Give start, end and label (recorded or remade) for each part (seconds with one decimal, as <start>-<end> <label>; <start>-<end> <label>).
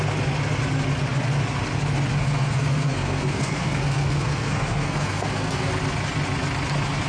0.0-2.2 recorded; 2.2-5.7 remade; 5.7-7.1 recorded